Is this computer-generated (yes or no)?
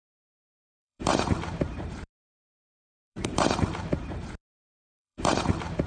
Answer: yes